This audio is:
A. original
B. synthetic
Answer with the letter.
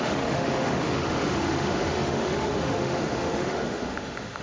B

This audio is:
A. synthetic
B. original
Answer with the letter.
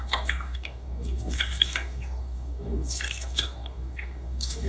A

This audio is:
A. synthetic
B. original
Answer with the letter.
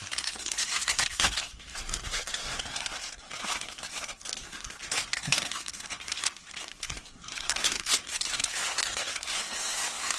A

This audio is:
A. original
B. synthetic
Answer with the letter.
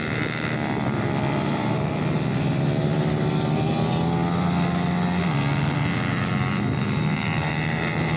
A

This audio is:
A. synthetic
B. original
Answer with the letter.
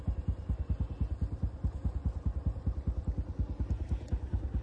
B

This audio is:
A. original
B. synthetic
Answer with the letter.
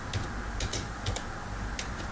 A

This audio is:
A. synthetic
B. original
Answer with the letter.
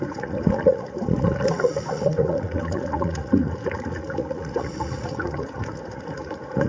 A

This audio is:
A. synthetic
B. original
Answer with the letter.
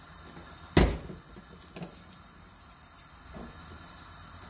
B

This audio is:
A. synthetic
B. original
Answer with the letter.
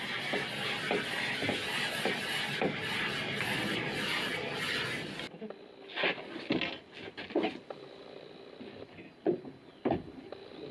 B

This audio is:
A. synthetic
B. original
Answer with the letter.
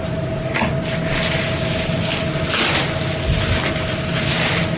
B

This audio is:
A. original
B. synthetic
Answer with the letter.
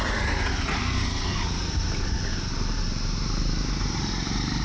A